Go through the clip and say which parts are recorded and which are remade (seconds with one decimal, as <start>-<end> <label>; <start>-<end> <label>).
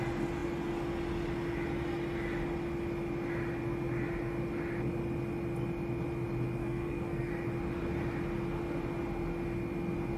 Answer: 0.0-6.6 recorded; 6.6-7.3 remade; 7.3-10.2 recorded